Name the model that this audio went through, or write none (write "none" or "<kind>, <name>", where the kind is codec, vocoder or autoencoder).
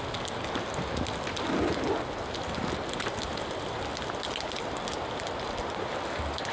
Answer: none